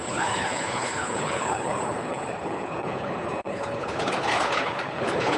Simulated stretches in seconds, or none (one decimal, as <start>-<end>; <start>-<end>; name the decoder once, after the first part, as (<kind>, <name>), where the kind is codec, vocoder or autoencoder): 0.0-5.4 (codec, HILCodec)